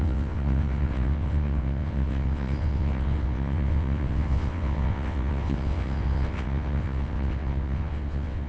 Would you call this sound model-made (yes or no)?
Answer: yes